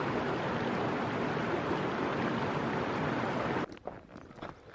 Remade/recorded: recorded